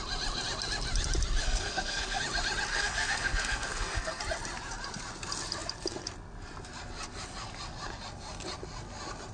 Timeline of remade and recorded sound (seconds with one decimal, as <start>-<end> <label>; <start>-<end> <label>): 0.0-1.4 recorded; 1.4-2.2 remade; 2.2-2.7 recorded; 2.7-4.2 remade; 4.2-9.3 recorded